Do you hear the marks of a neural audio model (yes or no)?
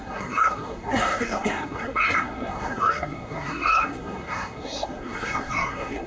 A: yes